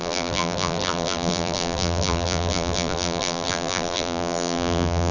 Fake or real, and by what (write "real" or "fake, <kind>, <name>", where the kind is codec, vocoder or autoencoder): fake, vocoder, BigVGAN v2